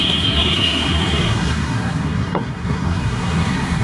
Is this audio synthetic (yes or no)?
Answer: yes